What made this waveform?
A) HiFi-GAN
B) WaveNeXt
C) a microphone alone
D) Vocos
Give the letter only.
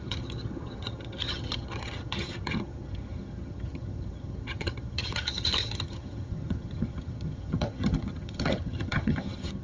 A